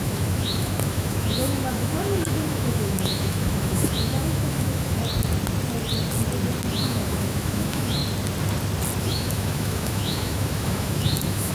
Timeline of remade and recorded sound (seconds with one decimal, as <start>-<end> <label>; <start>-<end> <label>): 0.0-5.0 remade; 5.0-6.7 recorded; 6.7-8.0 remade; 8.0-9.0 recorded; 9.0-11.5 remade